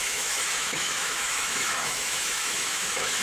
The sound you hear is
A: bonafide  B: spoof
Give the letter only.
B